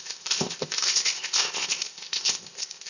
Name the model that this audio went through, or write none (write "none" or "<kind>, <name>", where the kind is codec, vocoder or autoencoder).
codec, ZipCodec